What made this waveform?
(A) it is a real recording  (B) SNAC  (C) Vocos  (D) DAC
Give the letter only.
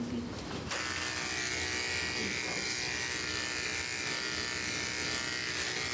A